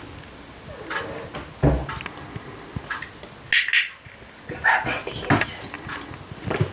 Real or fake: real